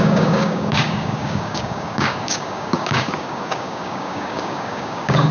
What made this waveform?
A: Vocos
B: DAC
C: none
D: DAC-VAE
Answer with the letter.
B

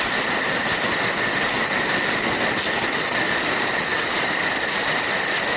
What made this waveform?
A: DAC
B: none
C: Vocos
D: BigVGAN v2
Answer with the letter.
B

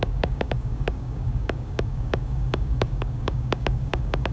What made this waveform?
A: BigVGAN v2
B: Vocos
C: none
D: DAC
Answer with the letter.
D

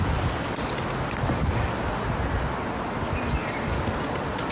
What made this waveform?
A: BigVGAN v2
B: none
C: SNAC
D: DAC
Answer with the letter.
B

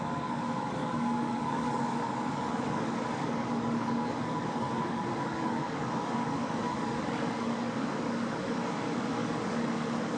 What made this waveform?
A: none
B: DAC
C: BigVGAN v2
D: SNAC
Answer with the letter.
B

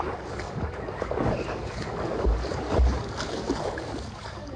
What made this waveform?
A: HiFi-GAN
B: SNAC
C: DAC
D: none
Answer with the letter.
C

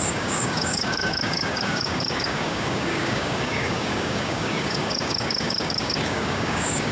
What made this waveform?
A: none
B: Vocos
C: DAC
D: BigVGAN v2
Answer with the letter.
C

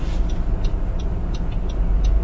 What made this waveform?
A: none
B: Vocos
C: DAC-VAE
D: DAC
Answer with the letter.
A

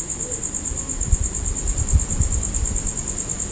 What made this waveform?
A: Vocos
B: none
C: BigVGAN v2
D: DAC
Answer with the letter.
B